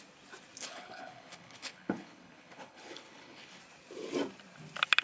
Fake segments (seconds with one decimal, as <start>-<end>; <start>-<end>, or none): 0.6-3.6